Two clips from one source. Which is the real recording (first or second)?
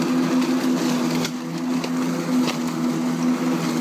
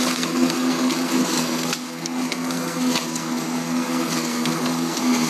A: first